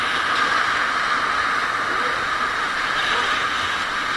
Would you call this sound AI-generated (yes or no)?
no